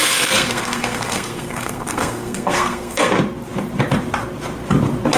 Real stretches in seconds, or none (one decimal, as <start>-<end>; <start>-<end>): 3.1-5.2